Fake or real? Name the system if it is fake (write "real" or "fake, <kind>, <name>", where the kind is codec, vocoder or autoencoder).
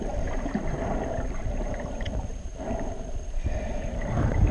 fake, vocoder, BigVGAN v2